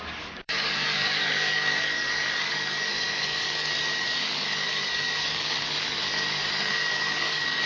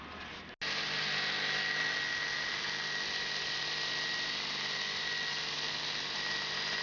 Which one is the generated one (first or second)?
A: first